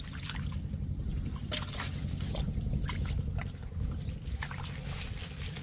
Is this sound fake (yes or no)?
no